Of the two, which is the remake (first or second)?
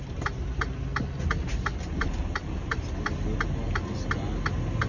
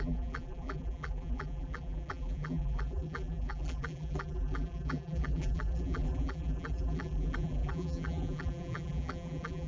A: second